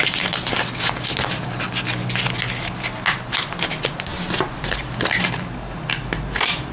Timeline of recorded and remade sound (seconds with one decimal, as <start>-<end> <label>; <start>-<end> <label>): 0.0-6.7 recorded